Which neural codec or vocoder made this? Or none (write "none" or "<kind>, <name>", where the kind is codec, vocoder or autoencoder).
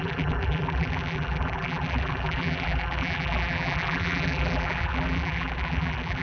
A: vocoder, BigVGAN v2